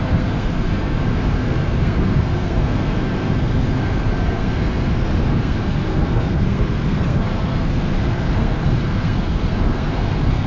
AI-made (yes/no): yes